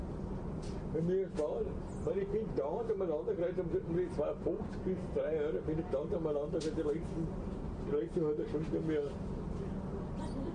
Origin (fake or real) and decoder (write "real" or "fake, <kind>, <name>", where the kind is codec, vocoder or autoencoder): real